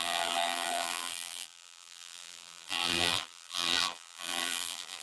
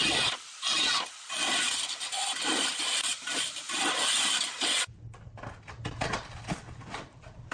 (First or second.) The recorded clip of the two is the second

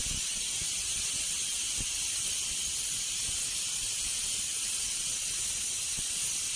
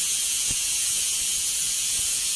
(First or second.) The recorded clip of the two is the first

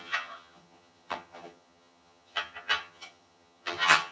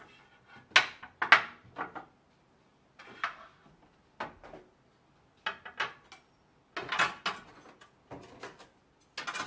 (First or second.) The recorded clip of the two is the second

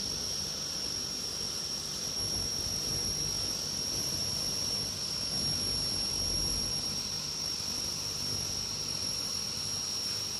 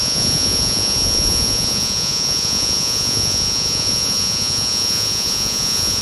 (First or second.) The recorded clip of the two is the first